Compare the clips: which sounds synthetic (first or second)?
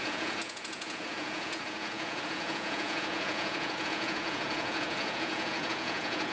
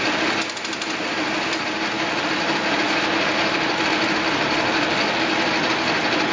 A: first